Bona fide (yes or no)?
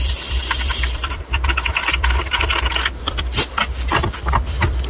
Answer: no